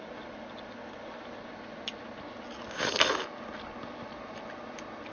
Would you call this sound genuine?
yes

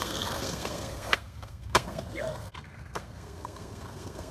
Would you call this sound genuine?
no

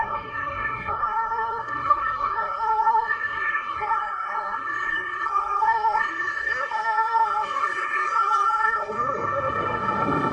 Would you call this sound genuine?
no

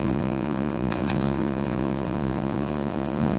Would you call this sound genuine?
no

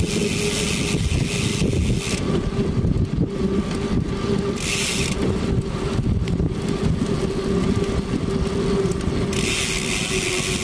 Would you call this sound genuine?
yes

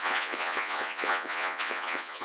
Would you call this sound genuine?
no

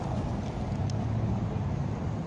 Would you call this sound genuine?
yes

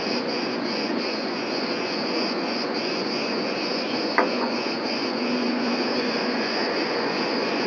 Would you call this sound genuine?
no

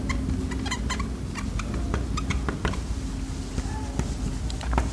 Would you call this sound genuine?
yes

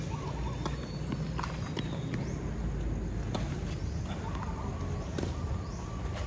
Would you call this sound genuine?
yes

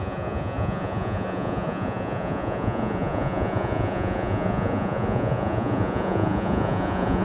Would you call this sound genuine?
no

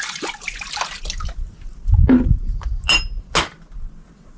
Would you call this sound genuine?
yes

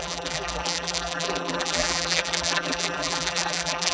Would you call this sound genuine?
no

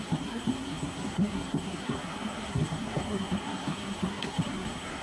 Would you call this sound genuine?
no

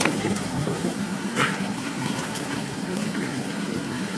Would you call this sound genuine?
no